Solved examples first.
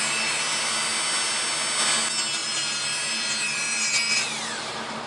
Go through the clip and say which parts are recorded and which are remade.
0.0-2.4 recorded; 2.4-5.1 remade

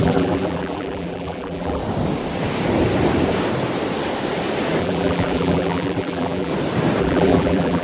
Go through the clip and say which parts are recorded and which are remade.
0.0-1.8 remade; 1.8-4.8 recorded; 4.8-6.5 remade; 6.5-7.0 recorded; 7.0-7.8 remade

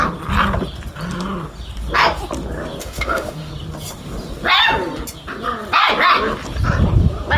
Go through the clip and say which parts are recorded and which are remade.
0.0-2.8 recorded; 2.8-3.5 remade; 3.5-7.4 recorded

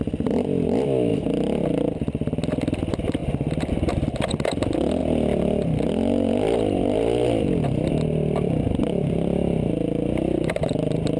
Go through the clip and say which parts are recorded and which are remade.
0.0-11.2 recorded